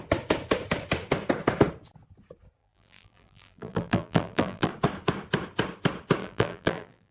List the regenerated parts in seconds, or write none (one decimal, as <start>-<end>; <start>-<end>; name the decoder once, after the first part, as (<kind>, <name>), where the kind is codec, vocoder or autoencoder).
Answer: 2.6-4.7 (vocoder, BigVGAN v2); 6.2-7.1